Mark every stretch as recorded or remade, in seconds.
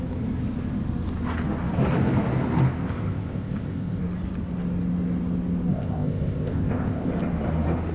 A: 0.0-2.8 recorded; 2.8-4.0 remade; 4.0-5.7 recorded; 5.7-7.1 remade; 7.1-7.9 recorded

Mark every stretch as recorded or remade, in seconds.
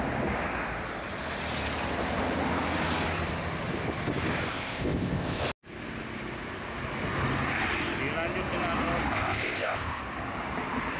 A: 0.0-4.5 recorded; 4.5-5.4 remade; 5.4-9.1 recorded; 9.1-10.0 remade; 10.0-11.0 recorded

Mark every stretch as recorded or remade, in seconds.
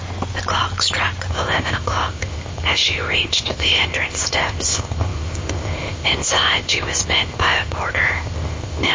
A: 0.0-1.3 recorded; 1.3-8.9 remade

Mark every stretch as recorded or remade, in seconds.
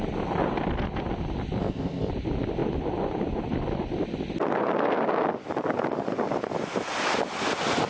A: 0.0-1.6 recorded; 1.6-2.1 remade; 2.1-7.9 recorded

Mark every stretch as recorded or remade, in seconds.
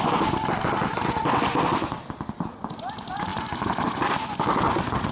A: 0.0-5.1 recorded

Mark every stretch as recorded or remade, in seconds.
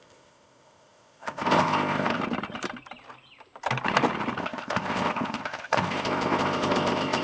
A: 0.0-2.2 remade; 2.2-4.4 recorded; 4.4-7.2 remade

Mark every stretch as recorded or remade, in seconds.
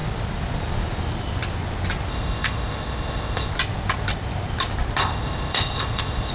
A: 0.0-2.1 recorded; 2.1-3.5 remade; 3.5-5.0 recorded; 5.0-6.3 remade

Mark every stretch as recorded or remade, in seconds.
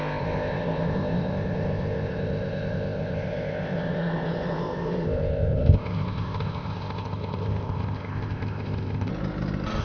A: 0.0-9.1 remade; 9.1-9.8 recorded